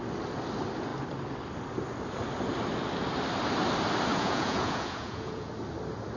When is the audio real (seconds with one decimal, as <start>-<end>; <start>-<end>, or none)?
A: 0.0-4.1; 5.5-6.2